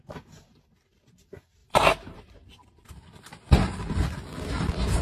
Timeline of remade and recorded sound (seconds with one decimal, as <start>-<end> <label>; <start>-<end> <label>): 0.0-1.6 recorded; 1.6-2.2 remade; 2.2-5.0 recorded